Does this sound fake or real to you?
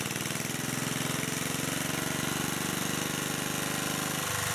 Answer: real